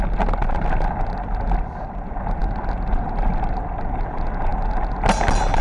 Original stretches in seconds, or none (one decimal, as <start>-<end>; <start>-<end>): 0.0-5.6

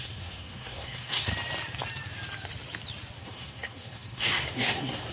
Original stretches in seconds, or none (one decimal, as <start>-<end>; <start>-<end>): 1.3-3.2

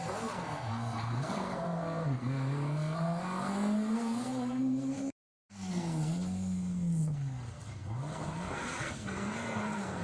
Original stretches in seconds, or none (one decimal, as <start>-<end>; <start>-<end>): none

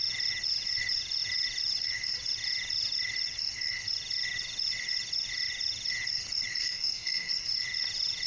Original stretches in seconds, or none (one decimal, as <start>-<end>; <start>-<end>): 0.0-6.6; 7.3-8.3

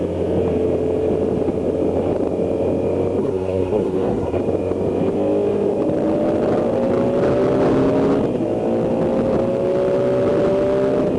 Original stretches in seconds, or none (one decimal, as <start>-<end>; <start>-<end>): 0.0-3.2; 4.4-11.2

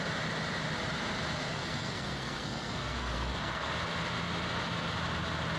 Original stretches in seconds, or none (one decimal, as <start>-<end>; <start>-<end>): 0.0-1.5; 3.7-5.6

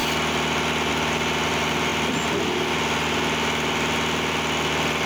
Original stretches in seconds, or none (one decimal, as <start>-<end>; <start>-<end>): 0.0-5.1